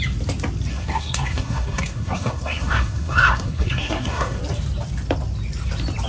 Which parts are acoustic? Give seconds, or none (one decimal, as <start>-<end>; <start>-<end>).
0.0-0.7; 4.4-6.1